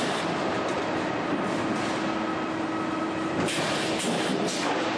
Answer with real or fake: real